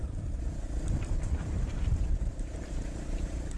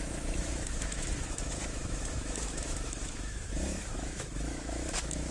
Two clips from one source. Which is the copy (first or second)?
second